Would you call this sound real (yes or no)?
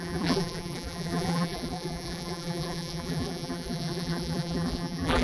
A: no